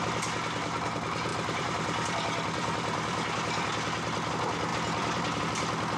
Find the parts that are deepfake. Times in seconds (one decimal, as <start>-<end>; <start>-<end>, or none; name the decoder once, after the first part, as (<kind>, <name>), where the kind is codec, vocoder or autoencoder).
1.3-4.3 (vocoder, BigVGAN v2); 4.7-5.4